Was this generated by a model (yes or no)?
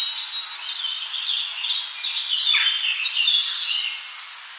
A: no